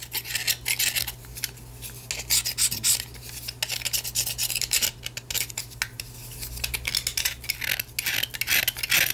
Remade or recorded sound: recorded